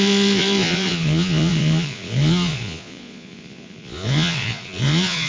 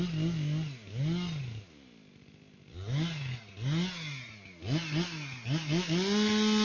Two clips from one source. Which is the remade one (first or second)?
first